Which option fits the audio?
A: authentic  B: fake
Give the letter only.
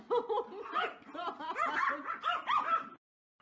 A